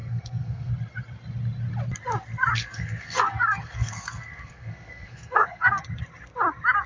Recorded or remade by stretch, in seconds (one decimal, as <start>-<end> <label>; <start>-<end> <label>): 0.0-0.7 remade; 0.7-2.5 recorded; 2.5-5.8 remade; 5.8-6.9 recorded